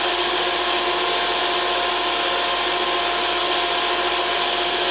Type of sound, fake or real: real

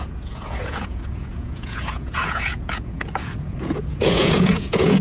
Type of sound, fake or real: fake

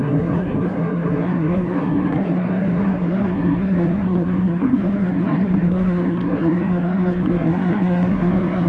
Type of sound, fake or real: fake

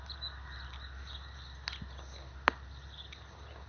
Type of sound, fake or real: real